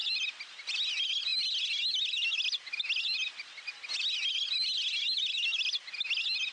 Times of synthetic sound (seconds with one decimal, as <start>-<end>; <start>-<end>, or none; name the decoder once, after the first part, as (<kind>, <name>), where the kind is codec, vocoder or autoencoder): none